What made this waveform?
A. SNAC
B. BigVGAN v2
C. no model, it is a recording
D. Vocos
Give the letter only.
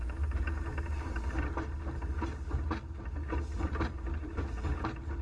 C